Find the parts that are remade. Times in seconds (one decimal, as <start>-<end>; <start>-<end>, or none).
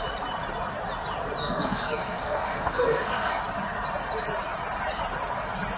1.4-3.4